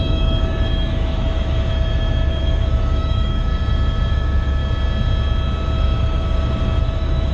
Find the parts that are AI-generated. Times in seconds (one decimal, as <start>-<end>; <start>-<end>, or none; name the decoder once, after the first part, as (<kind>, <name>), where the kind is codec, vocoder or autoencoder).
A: 0.0-3.5 (autoencoder, DAC-VAE); 4.1-4.6; 6.8-7.3